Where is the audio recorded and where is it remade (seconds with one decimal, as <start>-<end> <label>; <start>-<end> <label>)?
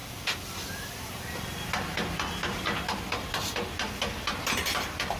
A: 0.0-5.2 recorded